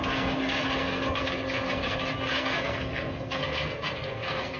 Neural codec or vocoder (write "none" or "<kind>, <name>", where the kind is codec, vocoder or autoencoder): codec, SNAC